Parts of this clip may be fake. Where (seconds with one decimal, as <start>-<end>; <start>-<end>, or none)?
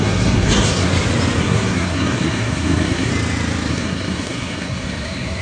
0.0-0.9; 1.4-3.1; 3.7-5.4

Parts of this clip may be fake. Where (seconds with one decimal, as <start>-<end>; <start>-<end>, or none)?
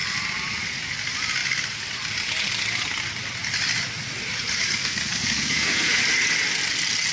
4.8-6.0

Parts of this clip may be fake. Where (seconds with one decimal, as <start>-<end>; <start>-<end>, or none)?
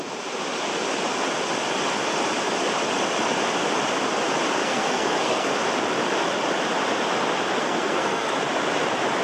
4.6-5.5; 7.6-8.3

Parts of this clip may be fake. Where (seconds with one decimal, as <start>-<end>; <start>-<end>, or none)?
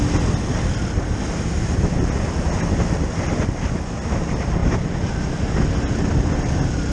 none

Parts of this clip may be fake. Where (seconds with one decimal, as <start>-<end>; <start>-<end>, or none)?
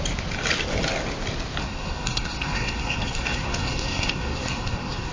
1.6-5.1